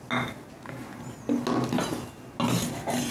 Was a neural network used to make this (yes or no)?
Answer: no